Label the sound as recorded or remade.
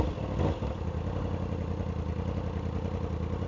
recorded